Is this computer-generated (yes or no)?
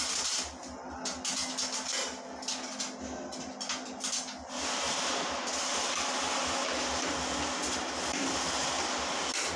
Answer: no